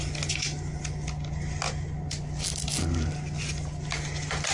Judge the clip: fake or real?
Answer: real